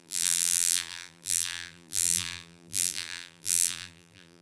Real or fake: fake